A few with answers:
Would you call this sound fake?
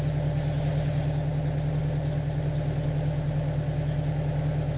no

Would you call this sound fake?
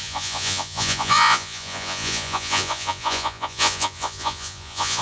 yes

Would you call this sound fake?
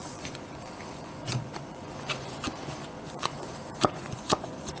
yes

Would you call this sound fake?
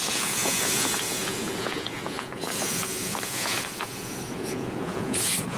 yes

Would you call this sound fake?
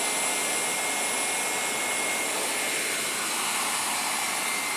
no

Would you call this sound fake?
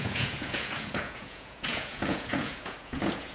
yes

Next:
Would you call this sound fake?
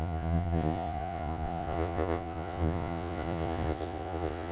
yes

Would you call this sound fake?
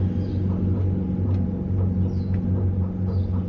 no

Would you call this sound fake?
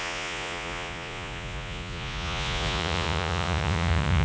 yes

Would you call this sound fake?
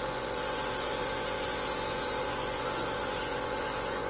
yes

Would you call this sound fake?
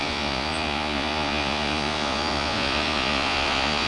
yes